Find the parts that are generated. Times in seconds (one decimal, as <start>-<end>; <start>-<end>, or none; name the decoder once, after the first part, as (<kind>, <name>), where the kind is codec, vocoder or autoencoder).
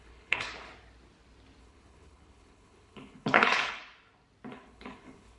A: 0.0-0.5 (codec, HILCodec); 1.6-3.8; 4.5-5.4